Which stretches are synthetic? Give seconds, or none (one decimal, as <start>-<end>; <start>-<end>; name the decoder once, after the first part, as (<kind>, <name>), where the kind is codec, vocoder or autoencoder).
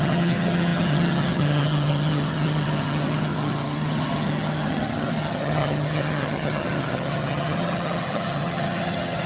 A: 0.0-9.3 (vocoder, HiFi-GAN)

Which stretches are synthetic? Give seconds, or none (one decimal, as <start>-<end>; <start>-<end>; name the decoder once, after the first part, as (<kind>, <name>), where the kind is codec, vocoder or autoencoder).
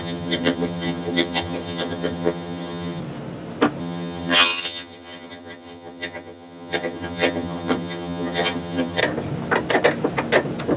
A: 0.0-3.0 (vocoder, HiFi-GAN); 3.8-9.0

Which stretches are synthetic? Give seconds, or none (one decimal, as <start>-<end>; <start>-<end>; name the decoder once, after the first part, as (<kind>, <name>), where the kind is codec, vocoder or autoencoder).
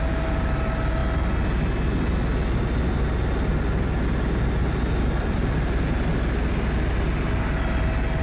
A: none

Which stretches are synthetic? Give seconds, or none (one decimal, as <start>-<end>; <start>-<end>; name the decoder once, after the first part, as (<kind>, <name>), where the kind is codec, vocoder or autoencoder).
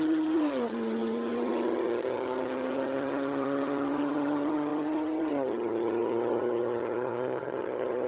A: 0.0-8.1 (vocoder, HiFi-GAN)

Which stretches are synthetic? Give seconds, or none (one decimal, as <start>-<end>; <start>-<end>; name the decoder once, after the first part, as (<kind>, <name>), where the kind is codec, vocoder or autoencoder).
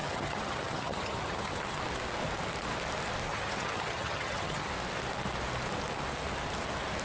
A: 0.0-1.8 (vocoder, HiFi-GAN); 3.3-4.7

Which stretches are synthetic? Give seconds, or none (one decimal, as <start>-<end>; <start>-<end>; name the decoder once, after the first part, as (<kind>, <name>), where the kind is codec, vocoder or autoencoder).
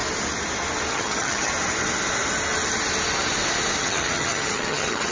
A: 0.9-1.5 (vocoder, HiFi-GAN); 3.8-5.1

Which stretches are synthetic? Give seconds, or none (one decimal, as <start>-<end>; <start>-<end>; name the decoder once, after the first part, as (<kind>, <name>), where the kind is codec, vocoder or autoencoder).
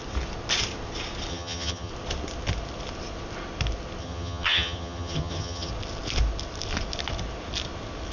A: 1.3-1.9 (vocoder, HiFi-GAN); 4.0-5.7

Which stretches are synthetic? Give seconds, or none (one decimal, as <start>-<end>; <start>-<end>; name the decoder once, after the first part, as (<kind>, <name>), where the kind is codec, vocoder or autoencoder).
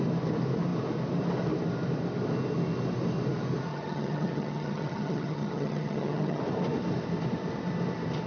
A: 3.7-6.4 (vocoder, HiFi-GAN)